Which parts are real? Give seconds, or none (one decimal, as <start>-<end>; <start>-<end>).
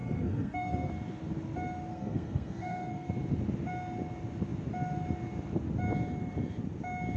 0.9-1.9; 3.1-7.2